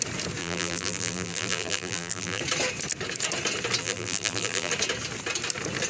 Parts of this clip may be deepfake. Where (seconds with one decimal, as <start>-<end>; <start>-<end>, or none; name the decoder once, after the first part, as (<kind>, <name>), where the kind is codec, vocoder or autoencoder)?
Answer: 0.4-2.4 (vocoder, BigVGAN v2); 3.8-4.7